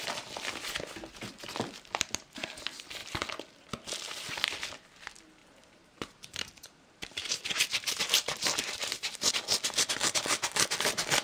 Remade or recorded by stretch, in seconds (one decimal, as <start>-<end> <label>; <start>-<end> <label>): 0.0-5.4 recorded; 5.4-9.3 remade; 9.3-11.2 recorded